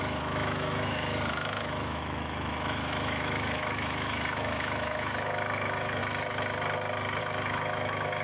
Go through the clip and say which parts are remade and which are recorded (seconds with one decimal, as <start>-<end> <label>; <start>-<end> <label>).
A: 0.0-6.0 remade; 6.0-7.2 recorded; 7.2-8.2 remade